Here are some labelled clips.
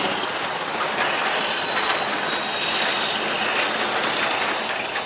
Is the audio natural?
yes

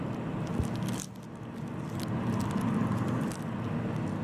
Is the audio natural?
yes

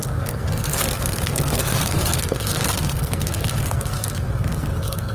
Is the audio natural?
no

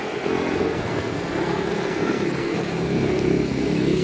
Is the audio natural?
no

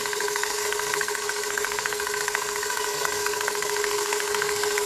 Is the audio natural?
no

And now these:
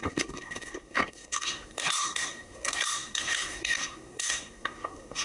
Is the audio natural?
no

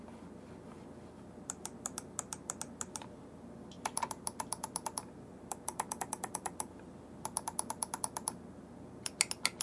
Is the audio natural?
yes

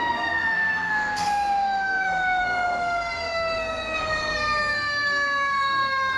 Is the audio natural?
no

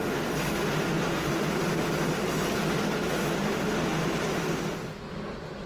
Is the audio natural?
yes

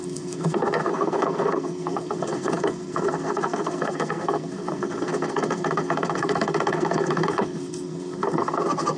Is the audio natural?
no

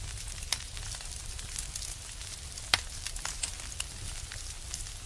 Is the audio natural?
yes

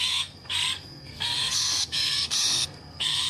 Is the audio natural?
no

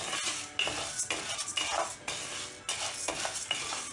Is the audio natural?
yes